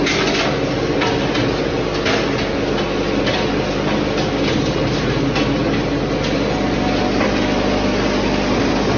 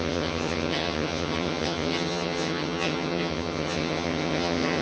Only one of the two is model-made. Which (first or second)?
second